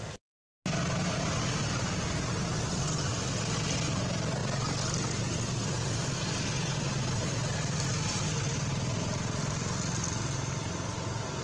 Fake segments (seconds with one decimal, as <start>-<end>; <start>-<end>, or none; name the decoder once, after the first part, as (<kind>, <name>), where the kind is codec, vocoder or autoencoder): none